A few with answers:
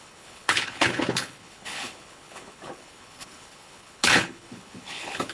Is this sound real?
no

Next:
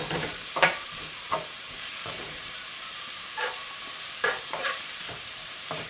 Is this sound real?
no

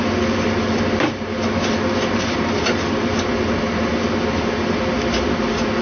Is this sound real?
yes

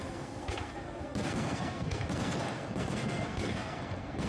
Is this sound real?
no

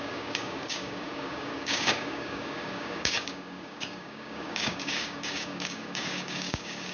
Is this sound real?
no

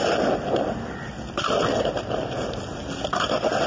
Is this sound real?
yes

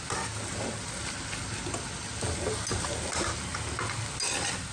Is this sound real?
yes